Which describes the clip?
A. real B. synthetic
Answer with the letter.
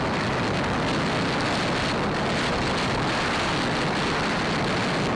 A